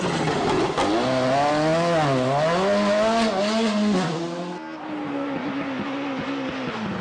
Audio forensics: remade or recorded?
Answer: recorded